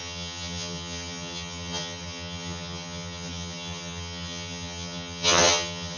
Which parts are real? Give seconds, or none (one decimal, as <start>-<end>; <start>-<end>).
none